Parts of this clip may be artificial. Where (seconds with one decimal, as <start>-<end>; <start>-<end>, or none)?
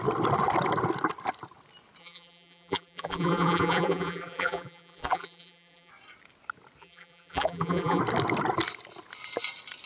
2.0-5.9; 6.8-8.0